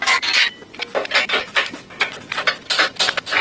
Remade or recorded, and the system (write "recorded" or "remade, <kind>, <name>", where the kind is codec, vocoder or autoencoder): recorded